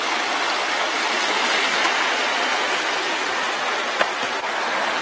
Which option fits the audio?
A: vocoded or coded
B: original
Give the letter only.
B